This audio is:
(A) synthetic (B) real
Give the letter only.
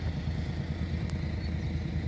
B